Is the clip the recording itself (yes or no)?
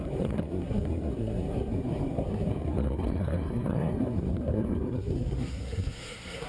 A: no